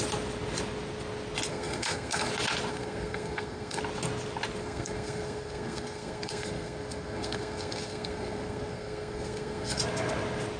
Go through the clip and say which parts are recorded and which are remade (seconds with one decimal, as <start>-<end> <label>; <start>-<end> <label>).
0.0-1.5 recorded; 1.5-2.3 remade; 2.3-2.7 recorded; 2.7-3.8 remade; 3.8-4.6 recorded; 4.6-9.8 remade; 9.8-10.6 recorded